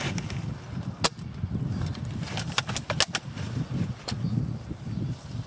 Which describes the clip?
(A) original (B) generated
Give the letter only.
A